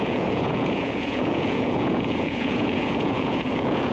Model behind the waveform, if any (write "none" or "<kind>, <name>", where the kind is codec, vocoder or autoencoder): vocoder, Vocos